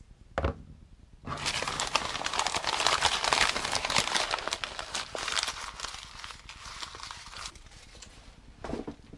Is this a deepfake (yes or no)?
no